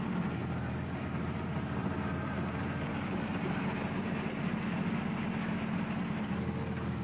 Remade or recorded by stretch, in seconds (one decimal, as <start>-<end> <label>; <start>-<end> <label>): 0.0-0.4 recorded; 0.4-2.9 remade; 2.9-3.3 recorded; 3.3-5.3 remade; 5.3-7.0 recorded